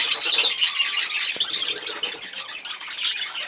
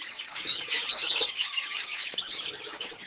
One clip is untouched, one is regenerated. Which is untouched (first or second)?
first